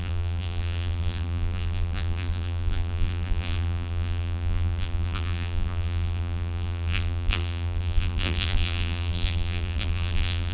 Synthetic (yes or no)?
yes